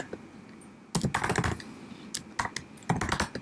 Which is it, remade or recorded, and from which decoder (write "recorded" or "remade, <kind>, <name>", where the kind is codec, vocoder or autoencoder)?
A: recorded